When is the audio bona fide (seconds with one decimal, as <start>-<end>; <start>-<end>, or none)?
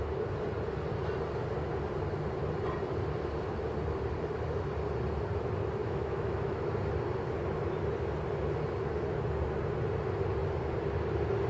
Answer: 0.0-5.8; 6.7-11.5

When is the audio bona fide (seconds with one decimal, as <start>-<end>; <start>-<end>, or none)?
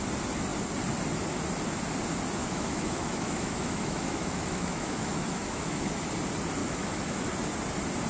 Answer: 0.0-2.4; 6.1-6.6; 7.2-8.1